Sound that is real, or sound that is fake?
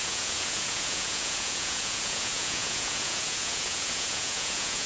fake